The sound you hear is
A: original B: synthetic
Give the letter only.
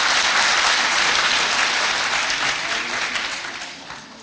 A